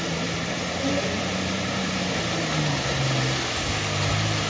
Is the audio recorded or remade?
recorded